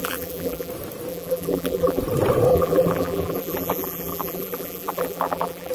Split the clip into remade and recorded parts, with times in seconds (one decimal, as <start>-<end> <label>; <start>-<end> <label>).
0.0-0.7 remade; 0.7-1.1 recorded; 1.1-2.0 remade; 2.0-2.5 recorded; 2.5-5.7 remade

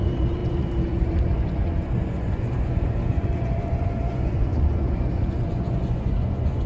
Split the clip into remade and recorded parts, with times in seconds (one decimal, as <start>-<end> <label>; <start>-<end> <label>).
0.0-6.7 remade

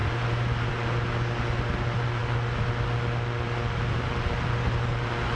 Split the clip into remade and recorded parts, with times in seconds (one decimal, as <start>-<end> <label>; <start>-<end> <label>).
0.0-5.4 recorded